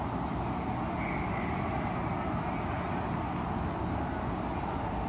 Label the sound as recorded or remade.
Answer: recorded